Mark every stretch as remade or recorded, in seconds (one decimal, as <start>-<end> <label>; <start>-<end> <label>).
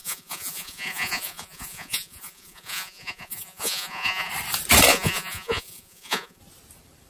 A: 0.0-4.3 remade; 4.3-4.9 recorded; 4.9-6.4 remade; 6.4-7.1 recorded